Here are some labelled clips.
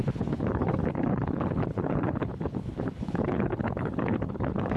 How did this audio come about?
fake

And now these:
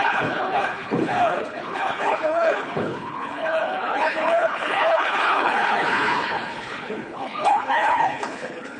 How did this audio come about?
fake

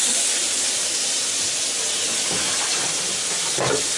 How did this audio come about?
real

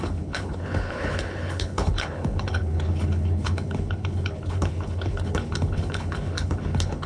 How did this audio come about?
fake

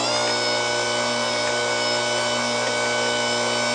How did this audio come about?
real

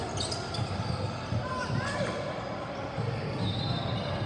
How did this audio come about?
real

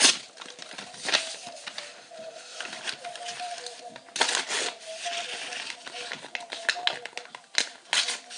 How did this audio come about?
real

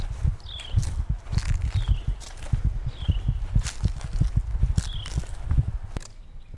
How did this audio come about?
real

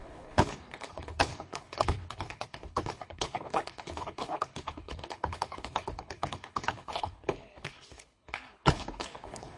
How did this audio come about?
fake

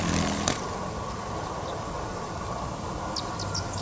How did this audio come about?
real